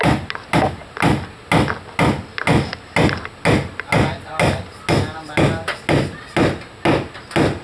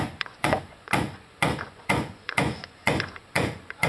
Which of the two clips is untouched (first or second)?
first